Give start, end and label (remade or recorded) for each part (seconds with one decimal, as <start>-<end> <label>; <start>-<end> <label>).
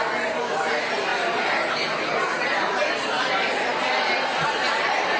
0.0-5.2 recorded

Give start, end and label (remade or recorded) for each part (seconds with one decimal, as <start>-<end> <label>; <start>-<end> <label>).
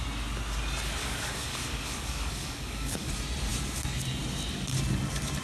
0.0-1.0 recorded; 1.0-3.1 remade; 3.1-5.4 recorded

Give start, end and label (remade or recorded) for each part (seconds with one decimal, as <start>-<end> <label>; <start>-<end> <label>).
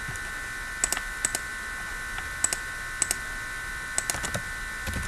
0.0-5.1 recorded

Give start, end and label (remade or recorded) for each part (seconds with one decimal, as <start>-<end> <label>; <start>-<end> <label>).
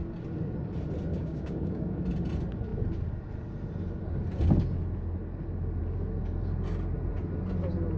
0.0-1.1 recorded; 1.1-2.0 remade; 2.0-8.0 recorded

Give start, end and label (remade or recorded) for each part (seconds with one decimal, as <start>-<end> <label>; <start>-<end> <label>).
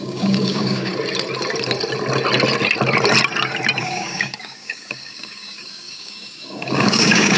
0.0-0.9 remade; 0.9-3.8 recorded; 3.8-7.4 remade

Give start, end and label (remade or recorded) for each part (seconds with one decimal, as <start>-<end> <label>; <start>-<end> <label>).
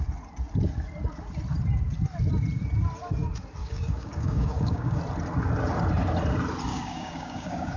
0.0-3.6 recorded; 3.6-5.0 remade; 5.0-6.7 recorded; 6.7-7.8 remade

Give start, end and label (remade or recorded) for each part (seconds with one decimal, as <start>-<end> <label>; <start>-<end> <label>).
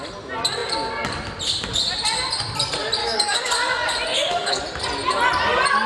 0.0-3.0 recorded; 3.0-3.5 remade; 3.5-4.1 recorded; 4.1-4.6 remade; 4.6-5.9 recorded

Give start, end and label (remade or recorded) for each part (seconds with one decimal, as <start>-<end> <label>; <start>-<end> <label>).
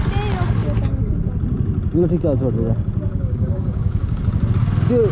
0.0-3.1 recorded; 3.1-4.2 remade; 4.2-5.1 recorded